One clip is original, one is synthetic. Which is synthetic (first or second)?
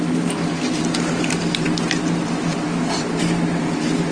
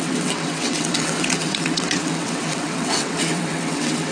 second